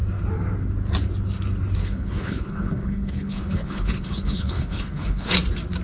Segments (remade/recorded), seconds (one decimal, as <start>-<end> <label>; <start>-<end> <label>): 0.0-1.8 recorded; 1.8-5.3 remade; 5.3-5.8 recorded